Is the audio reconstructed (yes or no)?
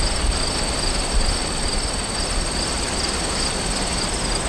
no